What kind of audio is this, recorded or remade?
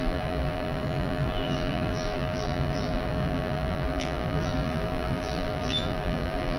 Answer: remade